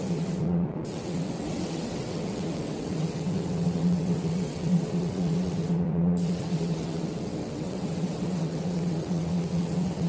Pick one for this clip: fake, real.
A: fake